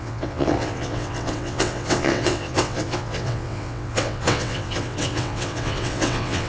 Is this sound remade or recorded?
remade